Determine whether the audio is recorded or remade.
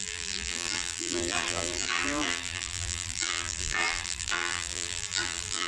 remade